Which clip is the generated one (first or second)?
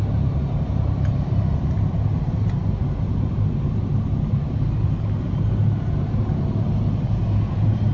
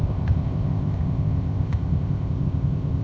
second